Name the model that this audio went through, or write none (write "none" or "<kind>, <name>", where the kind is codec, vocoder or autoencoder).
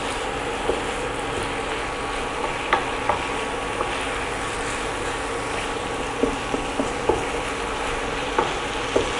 none